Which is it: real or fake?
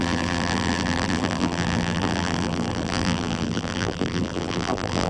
fake